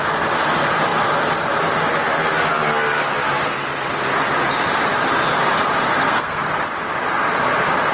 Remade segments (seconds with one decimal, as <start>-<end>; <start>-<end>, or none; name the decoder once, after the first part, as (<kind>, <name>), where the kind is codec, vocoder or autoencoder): 6.0-6.6 (codec, SNAC)